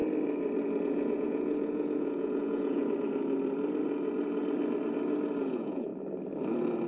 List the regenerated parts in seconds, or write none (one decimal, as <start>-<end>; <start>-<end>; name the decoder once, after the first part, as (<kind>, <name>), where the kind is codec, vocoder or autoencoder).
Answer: 0.8-2.8 (vocoder, Vocos); 5.4-5.9